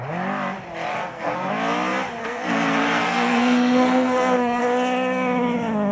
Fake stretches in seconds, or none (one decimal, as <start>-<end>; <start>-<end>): 0.9-1.5; 2.2-4.6